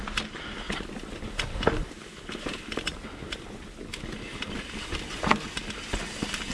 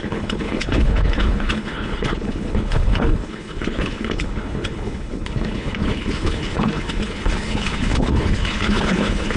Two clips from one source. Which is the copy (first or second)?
second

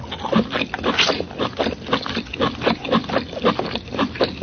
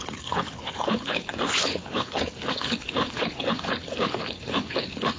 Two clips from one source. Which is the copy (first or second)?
second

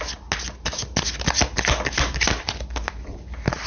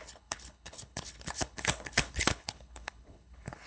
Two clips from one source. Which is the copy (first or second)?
second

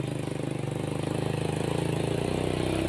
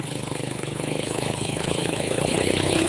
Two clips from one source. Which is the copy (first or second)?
second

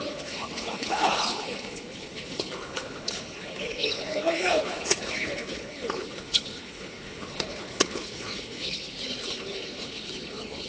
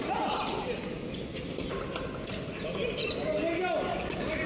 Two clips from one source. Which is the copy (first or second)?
first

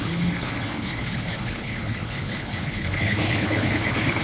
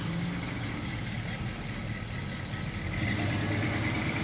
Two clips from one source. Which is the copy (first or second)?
first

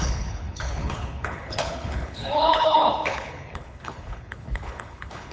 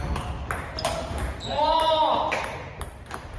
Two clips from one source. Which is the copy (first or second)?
first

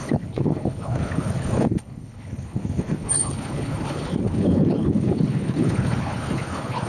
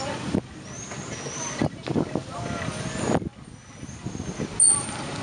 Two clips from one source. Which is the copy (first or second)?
first